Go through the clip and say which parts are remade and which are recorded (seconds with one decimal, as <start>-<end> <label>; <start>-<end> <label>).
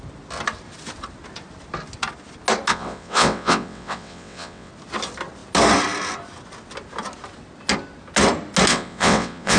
0.0-2.7 recorded; 2.7-4.7 remade; 4.7-8.7 recorded; 8.7-9.6 remade